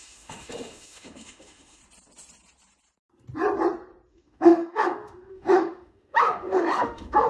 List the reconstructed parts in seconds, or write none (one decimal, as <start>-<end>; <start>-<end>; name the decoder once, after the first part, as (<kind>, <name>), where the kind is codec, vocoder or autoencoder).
0.0-1.8 (autoencoder, DAC-VAE); 4.1-7.3